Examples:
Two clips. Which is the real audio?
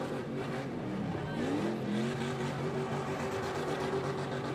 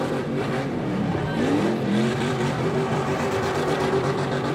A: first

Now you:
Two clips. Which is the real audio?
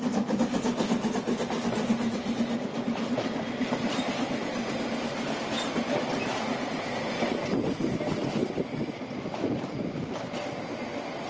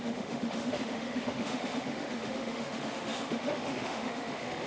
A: first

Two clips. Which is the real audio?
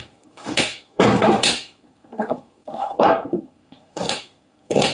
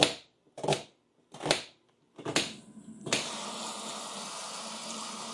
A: second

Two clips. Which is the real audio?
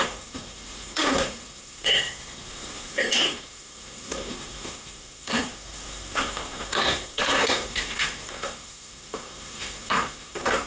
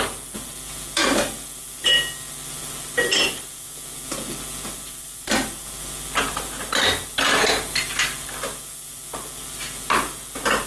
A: second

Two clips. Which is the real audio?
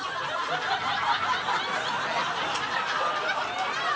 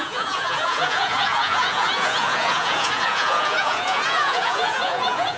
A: first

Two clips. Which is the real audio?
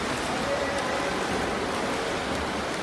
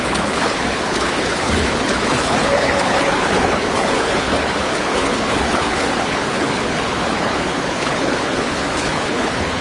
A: first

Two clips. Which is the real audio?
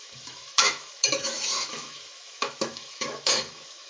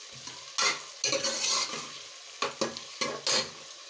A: second